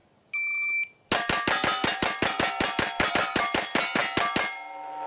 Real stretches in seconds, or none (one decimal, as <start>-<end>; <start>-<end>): 0.0-5.1